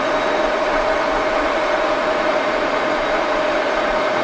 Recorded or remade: remade